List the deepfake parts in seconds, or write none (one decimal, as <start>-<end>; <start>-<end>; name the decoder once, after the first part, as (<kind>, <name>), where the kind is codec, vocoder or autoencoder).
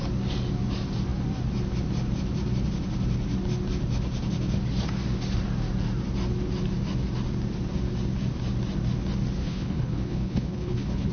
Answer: 9.4-11.1 (codec, HILCodec)